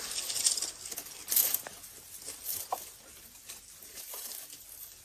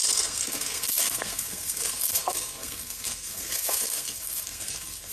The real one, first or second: first